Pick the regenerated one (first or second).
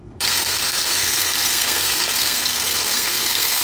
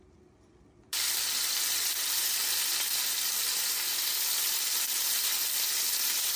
first